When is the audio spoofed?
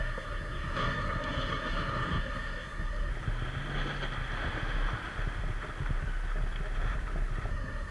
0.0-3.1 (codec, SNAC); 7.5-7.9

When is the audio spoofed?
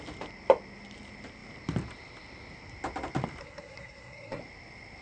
3.4-4.4 (codec, SNAC)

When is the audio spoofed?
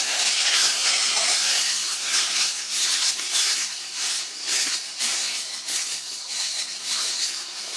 0.0-7.8 (codec, SNAC)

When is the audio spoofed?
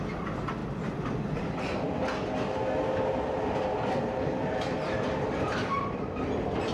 none